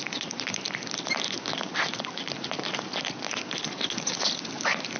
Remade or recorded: recorded